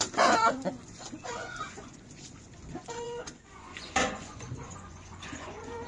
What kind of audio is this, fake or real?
fake